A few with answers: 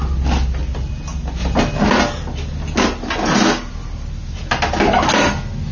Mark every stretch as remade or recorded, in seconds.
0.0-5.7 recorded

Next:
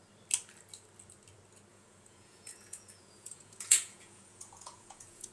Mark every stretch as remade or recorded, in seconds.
0.0-1.7 recorded; 1.7-5.3 remade

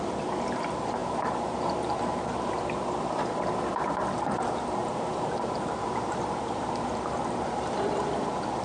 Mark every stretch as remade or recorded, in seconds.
0.0-1.0 recorded; 1.0-2.8 remade; 2.8-4.8 recorded; 4.8-8.0 remade; 8.0-8.6 recorded

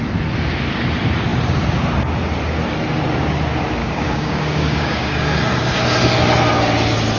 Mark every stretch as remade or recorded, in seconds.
0.0-3.8 recorded; 3.8-5.4 remade; 5.4-7.2 recorded

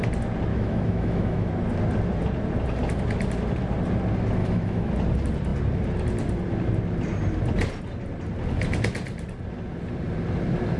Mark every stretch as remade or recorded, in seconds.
0.0-0.5 recorded; 0.5-1.5 remade; 1.5-4.4 recorded; 4.4-4.9 remade; 4.9-10.8 recorded